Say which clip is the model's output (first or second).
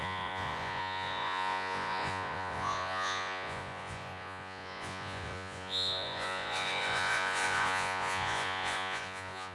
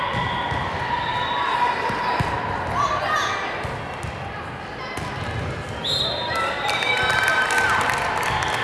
first